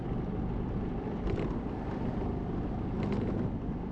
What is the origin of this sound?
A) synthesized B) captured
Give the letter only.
B